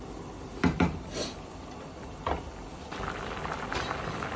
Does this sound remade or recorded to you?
recorded